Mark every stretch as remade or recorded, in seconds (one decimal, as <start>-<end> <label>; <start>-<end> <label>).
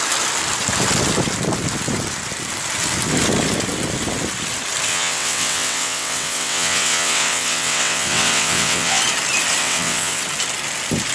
0.0-4.9 recorded; 4.9-9.0 remade; 9.0-9.6 recorded; 9.6-10.2 remade; 10.2-11.1 recorded